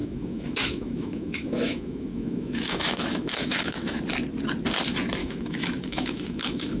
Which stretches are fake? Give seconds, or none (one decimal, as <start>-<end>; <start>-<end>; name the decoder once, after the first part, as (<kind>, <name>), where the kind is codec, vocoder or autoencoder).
0.0-4.0 (autoencoder, DAC-VAE); 5.2-6.8